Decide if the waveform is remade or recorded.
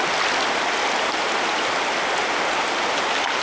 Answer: recorded